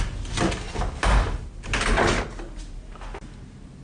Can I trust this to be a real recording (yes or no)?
yes